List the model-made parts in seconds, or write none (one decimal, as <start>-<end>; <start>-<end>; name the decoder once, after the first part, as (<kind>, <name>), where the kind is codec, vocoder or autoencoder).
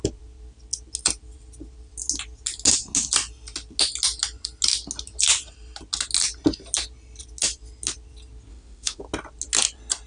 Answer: 8.5-9.0 (autoencoder, DAC-VAE)